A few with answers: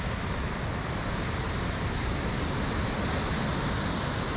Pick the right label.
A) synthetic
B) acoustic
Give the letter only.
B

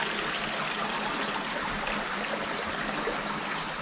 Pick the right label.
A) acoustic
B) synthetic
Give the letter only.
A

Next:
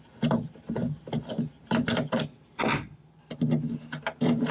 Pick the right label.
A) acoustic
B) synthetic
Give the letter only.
A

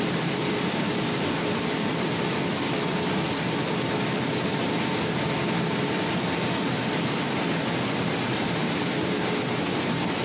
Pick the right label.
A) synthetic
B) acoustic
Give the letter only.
B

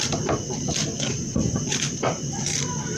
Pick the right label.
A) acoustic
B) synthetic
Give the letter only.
B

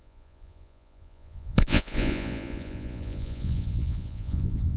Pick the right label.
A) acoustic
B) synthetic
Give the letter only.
B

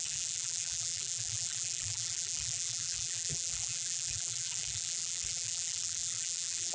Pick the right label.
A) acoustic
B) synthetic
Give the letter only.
B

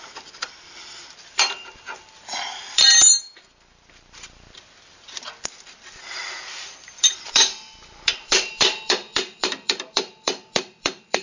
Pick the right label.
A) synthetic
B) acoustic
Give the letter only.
A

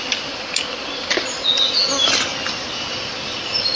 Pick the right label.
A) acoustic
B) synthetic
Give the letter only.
A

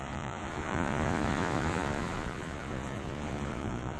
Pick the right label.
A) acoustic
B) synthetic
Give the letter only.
B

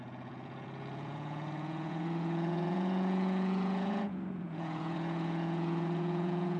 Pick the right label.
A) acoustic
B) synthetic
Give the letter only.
B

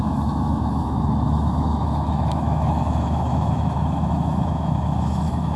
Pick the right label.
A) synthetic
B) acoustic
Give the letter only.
A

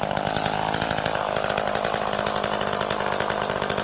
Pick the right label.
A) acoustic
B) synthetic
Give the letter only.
A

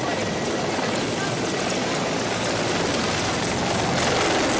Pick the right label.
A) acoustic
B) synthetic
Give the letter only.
A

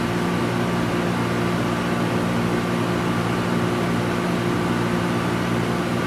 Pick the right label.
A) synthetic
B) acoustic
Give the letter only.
B